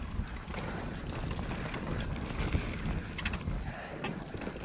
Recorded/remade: recorded